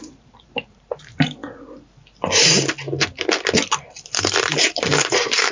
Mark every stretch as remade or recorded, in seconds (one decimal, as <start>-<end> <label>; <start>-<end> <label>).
0.0-1.4 remade; 1.4-4.2 recorded; 4.2-5.5 remade